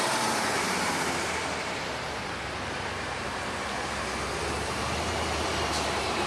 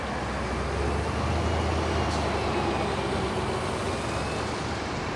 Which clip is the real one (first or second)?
second